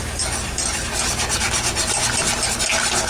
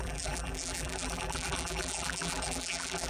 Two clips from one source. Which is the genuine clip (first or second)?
first